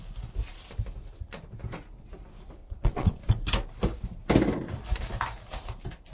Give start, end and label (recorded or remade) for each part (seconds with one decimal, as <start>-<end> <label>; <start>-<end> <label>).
0.0-2.6 recorded; 2.6-3.2 remade; 3.2-6.1 recorded